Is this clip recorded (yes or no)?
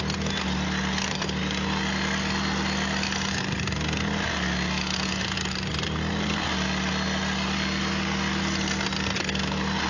yes